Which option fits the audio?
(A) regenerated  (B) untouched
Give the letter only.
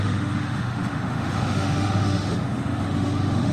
A